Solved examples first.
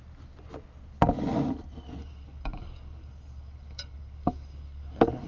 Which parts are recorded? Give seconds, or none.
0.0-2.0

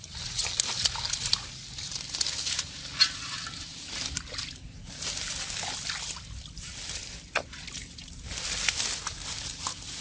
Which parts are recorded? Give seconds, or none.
0.0-10.0

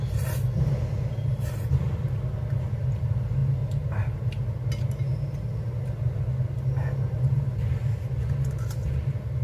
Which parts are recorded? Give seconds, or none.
0.0-9.4

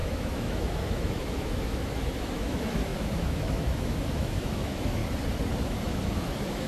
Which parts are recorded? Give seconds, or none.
5.0-5.6

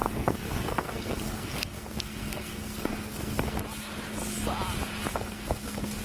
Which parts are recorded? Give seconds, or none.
3.6-5.1

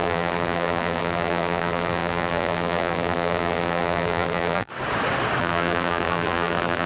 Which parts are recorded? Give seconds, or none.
4.7-5.4